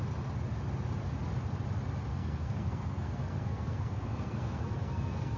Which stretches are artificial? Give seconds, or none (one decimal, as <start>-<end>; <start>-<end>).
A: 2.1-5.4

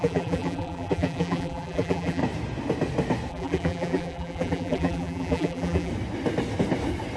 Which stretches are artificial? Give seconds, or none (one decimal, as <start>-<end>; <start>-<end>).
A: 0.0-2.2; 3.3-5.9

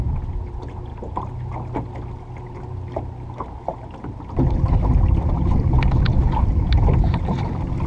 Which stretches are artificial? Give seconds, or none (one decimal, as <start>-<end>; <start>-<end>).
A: none

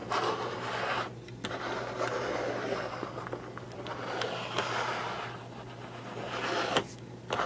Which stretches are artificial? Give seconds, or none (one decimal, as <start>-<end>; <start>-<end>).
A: none